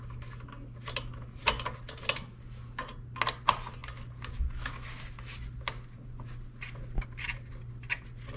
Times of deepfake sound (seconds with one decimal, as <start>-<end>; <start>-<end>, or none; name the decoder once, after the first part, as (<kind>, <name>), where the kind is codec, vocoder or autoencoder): none